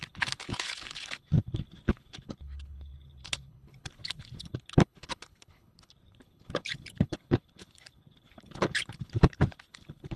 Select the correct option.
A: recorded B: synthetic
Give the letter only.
B